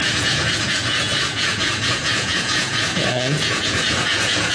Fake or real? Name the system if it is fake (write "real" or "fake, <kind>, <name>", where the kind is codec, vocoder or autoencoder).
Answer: fake, vocoder, Vocos